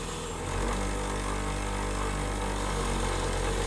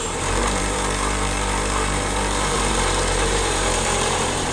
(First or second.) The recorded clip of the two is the first